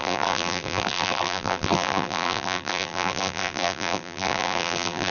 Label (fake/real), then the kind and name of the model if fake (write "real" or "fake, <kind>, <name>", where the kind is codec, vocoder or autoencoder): fake, vocoder, BigVGAN v2